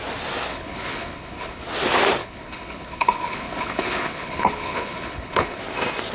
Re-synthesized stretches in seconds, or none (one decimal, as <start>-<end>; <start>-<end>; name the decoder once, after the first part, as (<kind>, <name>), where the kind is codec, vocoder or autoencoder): 0.5-1.6 (codec, HILCodec); 2.2-5.6